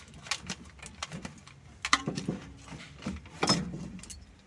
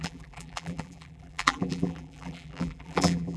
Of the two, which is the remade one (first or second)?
second